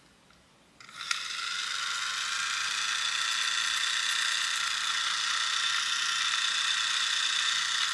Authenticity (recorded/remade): recorded